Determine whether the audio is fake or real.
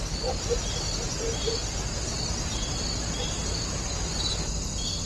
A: real